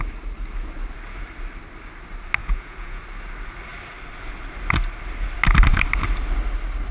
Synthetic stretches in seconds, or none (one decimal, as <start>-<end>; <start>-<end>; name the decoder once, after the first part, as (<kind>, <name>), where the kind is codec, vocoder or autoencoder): 2.4-3.0 (vocoder, Vocos)